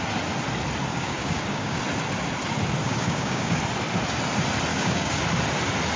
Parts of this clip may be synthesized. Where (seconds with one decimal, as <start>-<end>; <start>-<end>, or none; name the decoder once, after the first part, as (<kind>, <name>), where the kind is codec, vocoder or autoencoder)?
0.9-1.8 (codec, DAC); 2.8-3.6; 4.7-5.2

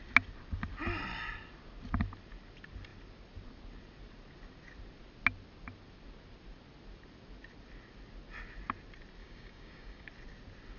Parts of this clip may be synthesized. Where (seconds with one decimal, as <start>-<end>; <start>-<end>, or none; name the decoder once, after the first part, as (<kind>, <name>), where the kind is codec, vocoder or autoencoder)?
9.2-10.1 (codec, DAC)